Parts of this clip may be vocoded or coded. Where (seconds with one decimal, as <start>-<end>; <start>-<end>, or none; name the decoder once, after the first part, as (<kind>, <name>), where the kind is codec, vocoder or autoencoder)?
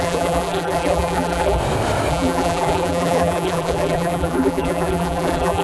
0.0-1.6 (vocoder, BigVGAN v2); 2.1-5.6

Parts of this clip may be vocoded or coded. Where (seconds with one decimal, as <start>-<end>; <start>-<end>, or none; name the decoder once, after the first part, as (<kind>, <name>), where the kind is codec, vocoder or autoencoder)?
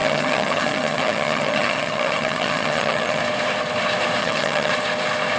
0.0-3.2 (vocoder, HiFi-GAN); 4.2-4.7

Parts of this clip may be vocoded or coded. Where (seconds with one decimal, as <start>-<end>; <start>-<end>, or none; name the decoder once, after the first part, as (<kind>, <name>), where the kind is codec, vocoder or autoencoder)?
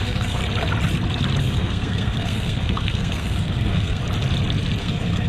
0.0-0.4 (codec, SNAC); 1.4-4.0; 4.8-5.3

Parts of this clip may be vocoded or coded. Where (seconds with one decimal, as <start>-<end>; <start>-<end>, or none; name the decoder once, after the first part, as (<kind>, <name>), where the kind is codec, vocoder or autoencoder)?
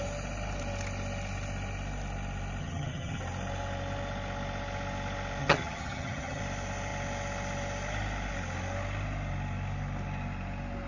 2.6-3.2 (vocoder, HiFi-GAN); 5.4-6.4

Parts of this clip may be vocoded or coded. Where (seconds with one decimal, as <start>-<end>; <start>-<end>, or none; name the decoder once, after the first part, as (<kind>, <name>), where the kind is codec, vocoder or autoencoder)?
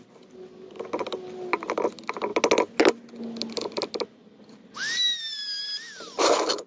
none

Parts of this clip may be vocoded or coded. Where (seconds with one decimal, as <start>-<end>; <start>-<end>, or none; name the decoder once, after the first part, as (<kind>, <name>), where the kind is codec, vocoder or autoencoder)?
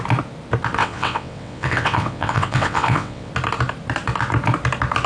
0.8-3.3 (vocoder, WaveNeXt)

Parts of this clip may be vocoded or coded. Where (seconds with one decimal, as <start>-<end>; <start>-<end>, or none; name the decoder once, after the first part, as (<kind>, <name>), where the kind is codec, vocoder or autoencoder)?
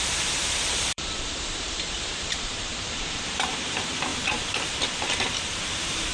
0.0-6.1 (vocoder, BigVGAN v2)